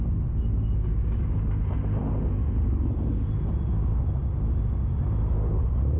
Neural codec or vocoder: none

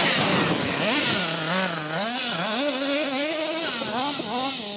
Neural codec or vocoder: none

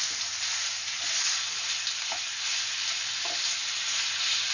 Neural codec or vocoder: none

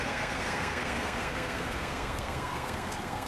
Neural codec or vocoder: codec, SNAC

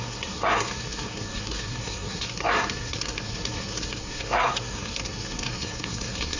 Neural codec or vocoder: codec, SNAC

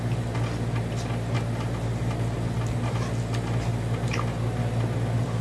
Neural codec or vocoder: none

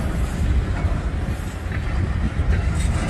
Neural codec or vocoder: none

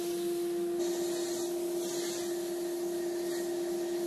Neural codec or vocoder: none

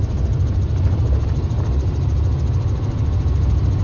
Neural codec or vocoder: none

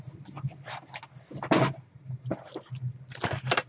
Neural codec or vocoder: none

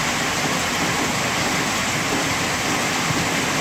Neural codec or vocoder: none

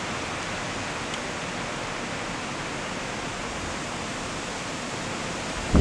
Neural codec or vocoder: none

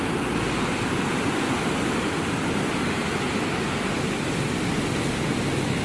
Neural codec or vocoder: none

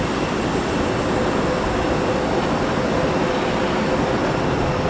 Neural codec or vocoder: none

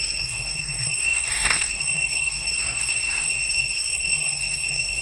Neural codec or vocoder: codec, SNAC